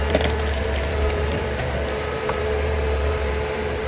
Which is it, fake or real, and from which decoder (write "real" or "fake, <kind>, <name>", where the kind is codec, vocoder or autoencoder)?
fake, vocoder, BigVGAN v2